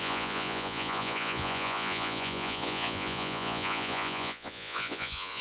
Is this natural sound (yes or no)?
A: no